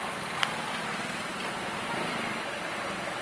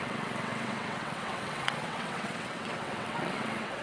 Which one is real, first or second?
first